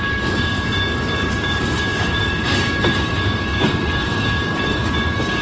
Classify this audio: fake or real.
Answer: fake